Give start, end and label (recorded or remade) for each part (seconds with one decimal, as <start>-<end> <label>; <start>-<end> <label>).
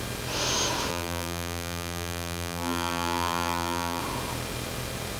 0.0-0.9 recorded; 0.9-4.0 remade; 4.0-5.2 recorded